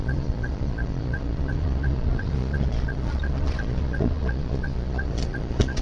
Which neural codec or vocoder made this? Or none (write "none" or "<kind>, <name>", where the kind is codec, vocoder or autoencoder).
vocoder, Vocos